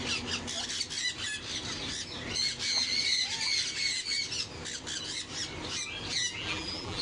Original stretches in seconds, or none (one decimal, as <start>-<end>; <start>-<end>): 0.0-6.1

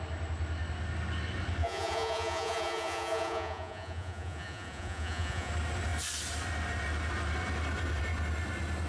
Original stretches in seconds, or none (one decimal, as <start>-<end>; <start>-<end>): 0.0-1.6; 5.5-8.9

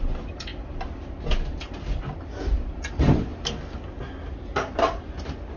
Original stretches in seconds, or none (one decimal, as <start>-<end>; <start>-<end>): 0.0-5.6

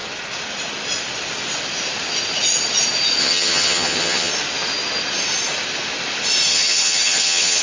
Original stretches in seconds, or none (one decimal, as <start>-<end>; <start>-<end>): 0.0-3.2; 4.3-6.5

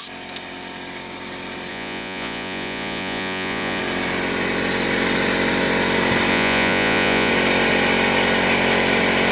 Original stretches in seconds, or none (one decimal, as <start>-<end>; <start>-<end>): 0.0-1.7; 3.8-6.3; 7.3-9.3